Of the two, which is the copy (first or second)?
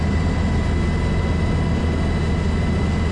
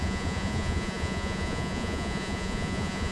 second